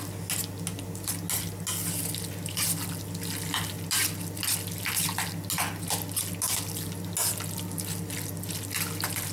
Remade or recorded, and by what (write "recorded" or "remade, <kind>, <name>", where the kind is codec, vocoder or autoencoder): recorded